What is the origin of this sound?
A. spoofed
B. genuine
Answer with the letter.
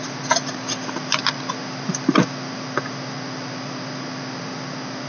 B